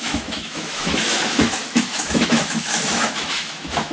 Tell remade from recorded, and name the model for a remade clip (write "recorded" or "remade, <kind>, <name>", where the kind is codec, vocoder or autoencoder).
remade, autoencoder, DAC-VAE